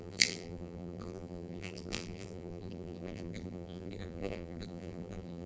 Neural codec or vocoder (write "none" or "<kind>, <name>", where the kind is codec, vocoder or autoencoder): vocoder, BigVGAN v2